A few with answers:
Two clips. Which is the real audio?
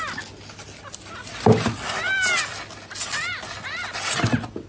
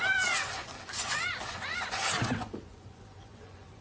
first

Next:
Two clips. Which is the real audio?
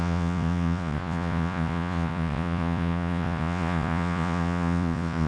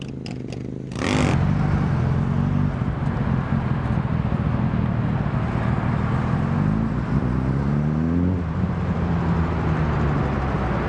second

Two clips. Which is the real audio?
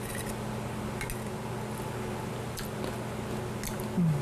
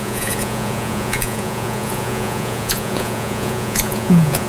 first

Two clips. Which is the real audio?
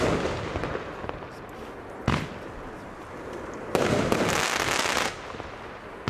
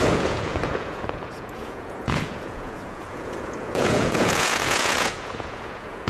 first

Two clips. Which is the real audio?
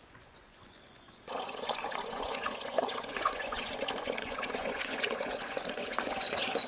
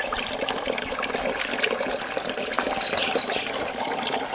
second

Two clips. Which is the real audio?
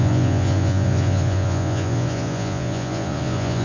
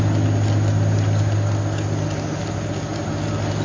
second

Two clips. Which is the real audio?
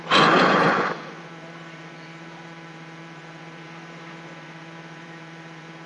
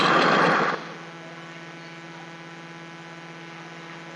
second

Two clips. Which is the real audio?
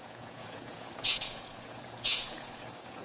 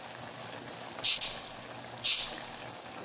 second